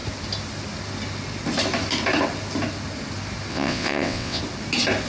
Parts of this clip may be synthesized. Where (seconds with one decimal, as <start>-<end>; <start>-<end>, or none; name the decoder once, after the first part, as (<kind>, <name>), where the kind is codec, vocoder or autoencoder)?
3.5-4.4 (vocoder, WaveNeXt)